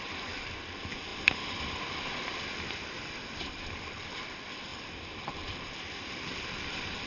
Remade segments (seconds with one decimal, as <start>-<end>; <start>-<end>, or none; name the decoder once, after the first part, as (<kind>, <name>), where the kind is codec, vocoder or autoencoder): 0.0-1.1 (vocoder, BigVGAN v2); 3.2-7.1